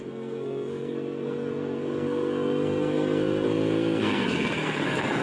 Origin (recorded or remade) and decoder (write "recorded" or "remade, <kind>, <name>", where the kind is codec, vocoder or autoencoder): remade, codec, SNAC